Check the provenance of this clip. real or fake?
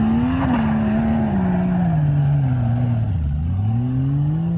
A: real